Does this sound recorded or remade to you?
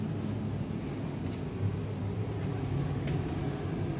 recorded